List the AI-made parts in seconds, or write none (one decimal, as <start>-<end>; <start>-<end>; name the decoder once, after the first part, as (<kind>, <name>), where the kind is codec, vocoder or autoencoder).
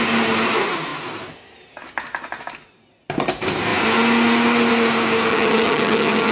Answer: 5.3-6.3 (vocoder, HiFi-GAN)